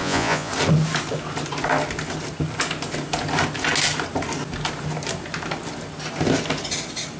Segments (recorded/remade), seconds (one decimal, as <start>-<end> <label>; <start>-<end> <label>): 0.0-0.5 remade; 0.5-7.2 recorded